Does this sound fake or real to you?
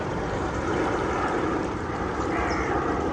fake